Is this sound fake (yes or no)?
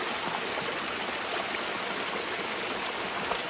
no